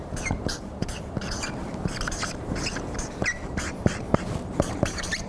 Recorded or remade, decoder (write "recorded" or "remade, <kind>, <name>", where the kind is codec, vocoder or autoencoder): remade, vocoder, BigVGAN v2